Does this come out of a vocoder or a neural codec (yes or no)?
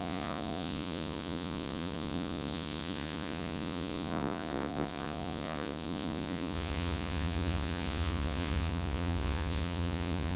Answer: yes